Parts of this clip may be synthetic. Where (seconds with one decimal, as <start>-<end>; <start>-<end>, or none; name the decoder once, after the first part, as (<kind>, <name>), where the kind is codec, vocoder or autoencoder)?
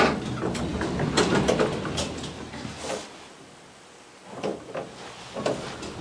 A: none